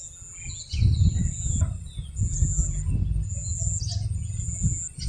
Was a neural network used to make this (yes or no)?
no